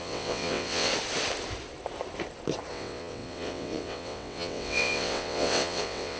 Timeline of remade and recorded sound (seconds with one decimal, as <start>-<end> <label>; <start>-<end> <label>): 0.0-0.9 remade; 0.9-2.7 recorded; 2.7-6.2 remade